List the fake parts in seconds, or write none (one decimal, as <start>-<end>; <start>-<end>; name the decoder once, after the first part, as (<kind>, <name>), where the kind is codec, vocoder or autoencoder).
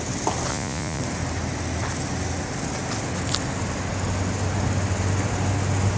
0.5-1.0 (vocoder, Vocos)